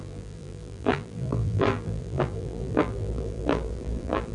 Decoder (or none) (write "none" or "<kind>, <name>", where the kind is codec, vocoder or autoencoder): vocoder, BigVGAN v2